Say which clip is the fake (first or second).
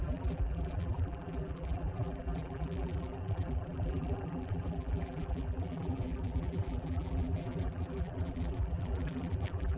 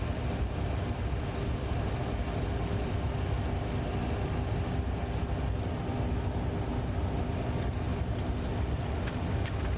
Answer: first